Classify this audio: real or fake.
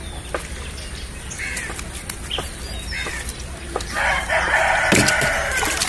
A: real